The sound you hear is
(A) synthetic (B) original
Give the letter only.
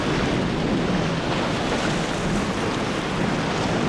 B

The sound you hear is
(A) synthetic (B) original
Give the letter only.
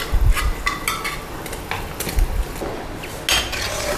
B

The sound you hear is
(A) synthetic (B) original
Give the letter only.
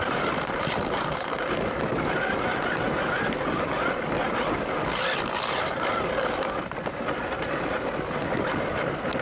B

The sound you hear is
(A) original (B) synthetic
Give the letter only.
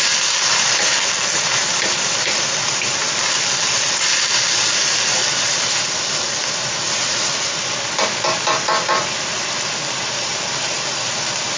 B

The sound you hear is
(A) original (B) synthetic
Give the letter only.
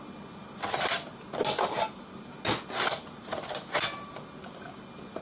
A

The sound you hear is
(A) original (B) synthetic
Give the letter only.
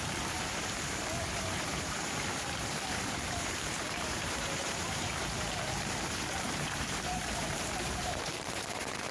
B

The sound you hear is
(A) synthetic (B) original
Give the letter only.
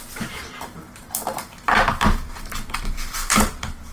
B